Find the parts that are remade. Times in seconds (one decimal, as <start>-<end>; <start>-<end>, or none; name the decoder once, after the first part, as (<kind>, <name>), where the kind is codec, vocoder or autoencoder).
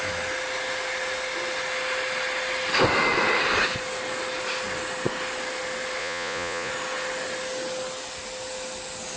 6.0-6.7 (vocoder, Vocos)